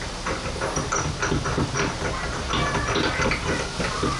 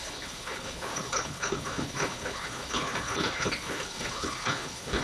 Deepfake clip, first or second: second